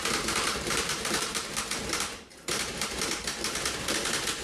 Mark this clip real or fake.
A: fake